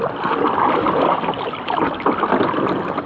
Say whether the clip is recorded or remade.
recorded